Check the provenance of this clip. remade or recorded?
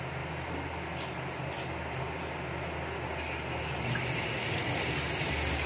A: recorded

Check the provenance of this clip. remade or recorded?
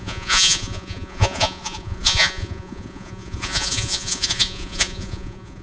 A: remade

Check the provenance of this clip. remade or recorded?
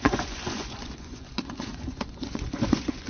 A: remade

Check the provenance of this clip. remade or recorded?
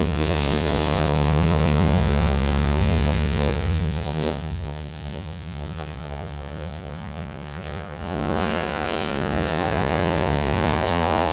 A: remade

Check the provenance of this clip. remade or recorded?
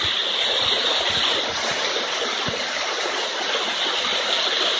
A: recorded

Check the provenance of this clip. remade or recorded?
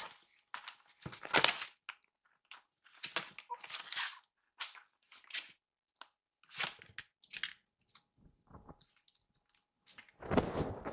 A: recorded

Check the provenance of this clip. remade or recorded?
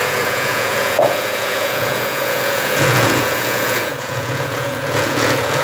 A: remade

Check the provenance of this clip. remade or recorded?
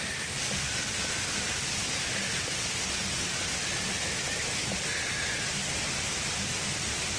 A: recorded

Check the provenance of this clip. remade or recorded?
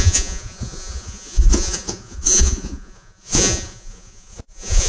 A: remade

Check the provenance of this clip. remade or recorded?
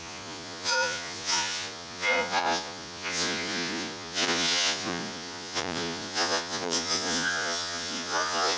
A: remade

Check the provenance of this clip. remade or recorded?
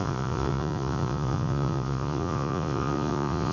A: remade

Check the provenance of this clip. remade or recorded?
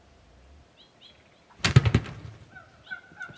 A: recorded